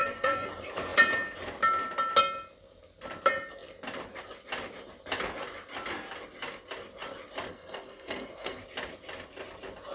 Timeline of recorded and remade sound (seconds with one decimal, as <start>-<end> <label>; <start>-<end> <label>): 0.0-0.5 remade; 0.5-7.5 recorded; 7.5-8.6 remade; 8.6-9.9 recorded

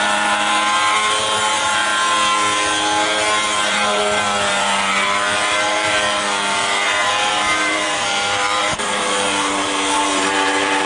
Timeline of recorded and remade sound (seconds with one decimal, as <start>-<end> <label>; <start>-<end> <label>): 0.0-1.9 remade; 1.9-3.7 recorded; 3.7-10.9 remade